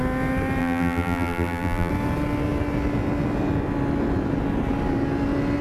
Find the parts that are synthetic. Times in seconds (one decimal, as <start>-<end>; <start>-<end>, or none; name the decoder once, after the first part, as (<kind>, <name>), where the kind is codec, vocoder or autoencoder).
0.6-1.9 (vocoder, BigVGAN v2)